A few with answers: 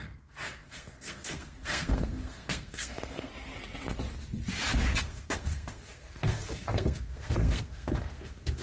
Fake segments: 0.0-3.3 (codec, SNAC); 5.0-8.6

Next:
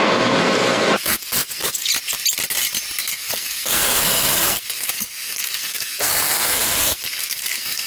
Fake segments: 0.0-1.9 (codec, SNAC); 3.0-7.9